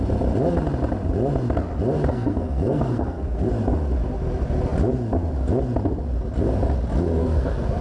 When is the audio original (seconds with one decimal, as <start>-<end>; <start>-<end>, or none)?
0.0-2.1; 3.5-7.2